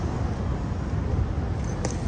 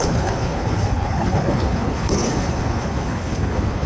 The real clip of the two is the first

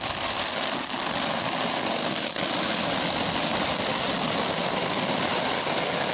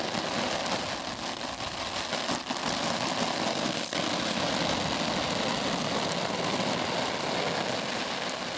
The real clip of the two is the second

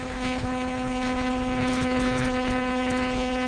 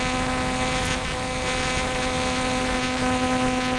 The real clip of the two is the second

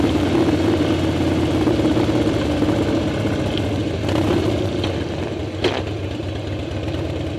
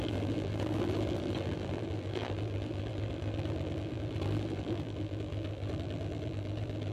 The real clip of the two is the first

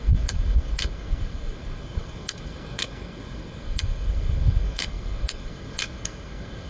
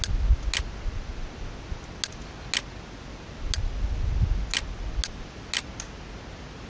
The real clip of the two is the second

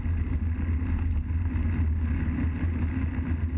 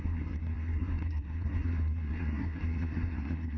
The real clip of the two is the first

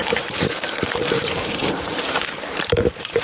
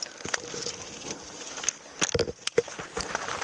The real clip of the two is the second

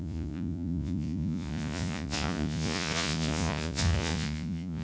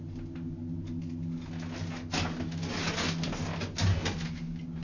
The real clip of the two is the second